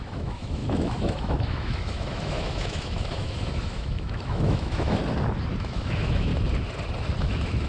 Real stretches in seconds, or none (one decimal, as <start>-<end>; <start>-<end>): 5.0-5.6; 6.3-7.2

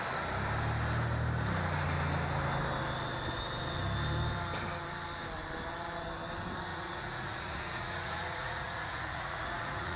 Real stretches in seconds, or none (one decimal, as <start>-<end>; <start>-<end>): 0.0-6.7